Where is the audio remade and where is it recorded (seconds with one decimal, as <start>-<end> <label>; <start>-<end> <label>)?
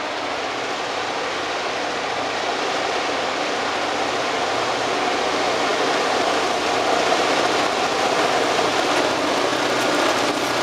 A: 0.0-10.6 recorded